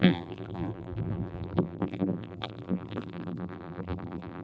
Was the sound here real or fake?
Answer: fake